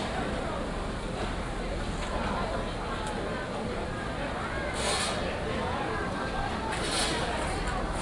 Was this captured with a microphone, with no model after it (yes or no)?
yes